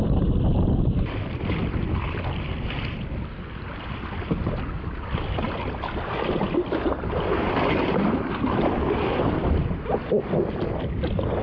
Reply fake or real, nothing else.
real